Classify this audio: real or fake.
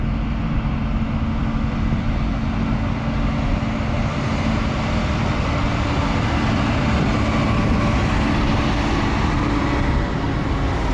real